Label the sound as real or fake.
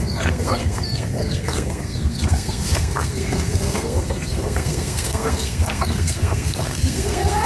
fake